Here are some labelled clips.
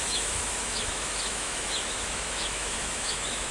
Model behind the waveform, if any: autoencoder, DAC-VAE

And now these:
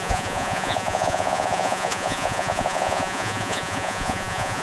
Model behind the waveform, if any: vocoder, Vocos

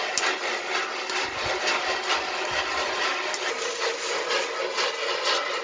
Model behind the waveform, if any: none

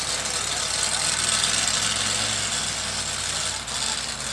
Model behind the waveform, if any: none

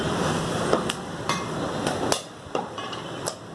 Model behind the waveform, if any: none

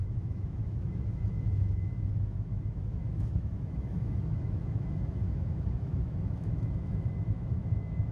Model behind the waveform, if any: autoencoder, DAC-VAE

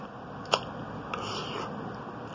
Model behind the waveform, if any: none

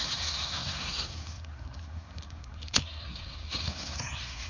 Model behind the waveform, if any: codec, SNAC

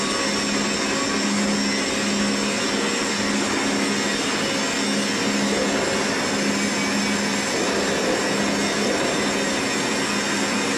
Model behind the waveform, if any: none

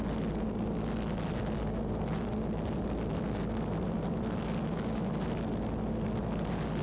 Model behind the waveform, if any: none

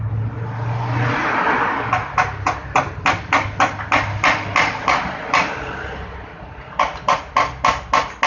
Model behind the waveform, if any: none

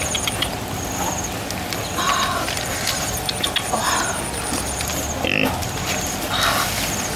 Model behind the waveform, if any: none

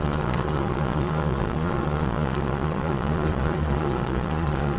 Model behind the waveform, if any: vocoder, Vocos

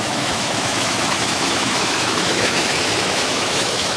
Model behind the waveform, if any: autoencoder, DAC-VAE